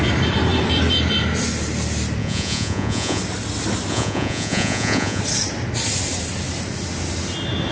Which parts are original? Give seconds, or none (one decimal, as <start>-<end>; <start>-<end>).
0.0-2.2; 3.2-3.9; 5.2-7.7